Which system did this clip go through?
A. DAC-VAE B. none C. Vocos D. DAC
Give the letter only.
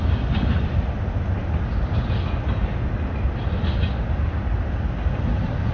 B